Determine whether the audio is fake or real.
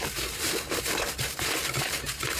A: fake